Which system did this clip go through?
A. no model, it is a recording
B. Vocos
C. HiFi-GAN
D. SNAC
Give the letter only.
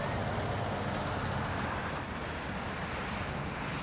A